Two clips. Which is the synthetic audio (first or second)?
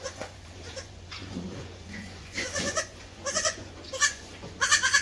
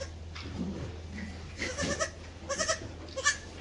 first